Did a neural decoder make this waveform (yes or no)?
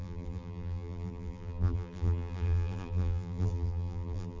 yes